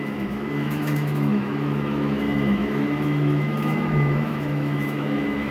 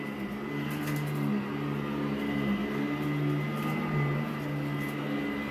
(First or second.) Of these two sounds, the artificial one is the first